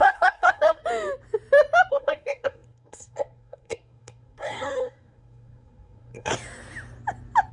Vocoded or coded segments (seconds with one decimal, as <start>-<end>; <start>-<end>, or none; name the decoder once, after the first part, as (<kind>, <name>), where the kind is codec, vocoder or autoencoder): 0.0-0.8 (codec, SNAC); 1.9-6.3

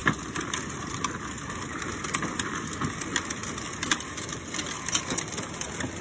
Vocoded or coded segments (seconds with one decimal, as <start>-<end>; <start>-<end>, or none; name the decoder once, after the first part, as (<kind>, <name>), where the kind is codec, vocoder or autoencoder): none

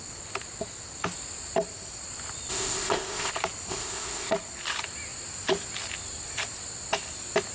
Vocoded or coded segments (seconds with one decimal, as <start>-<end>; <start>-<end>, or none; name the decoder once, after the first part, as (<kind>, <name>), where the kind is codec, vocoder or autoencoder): 2.5-3.3 (codec, ZipCodec); 3.7-4.3

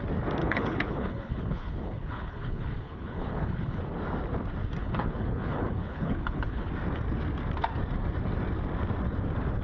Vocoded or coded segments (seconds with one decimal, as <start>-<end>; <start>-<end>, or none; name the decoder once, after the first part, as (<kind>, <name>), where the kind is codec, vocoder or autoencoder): 0.4-3.8 (codec, HILCodec); 4.8-6.7

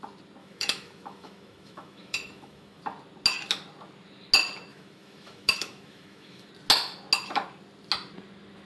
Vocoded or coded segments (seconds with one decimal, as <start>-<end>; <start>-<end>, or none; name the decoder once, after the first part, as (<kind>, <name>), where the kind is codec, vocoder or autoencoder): 0.4-2.8 (autoencoder, DAC-VAE); 4.7-6.5

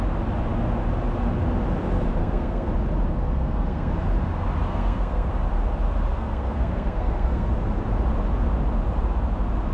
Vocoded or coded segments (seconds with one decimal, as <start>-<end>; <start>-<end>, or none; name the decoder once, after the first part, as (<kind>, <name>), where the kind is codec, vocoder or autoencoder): 2.2-2.7 (codec, SNAC); 3.1-3.9; 4.7-5.3; 6.1-7.5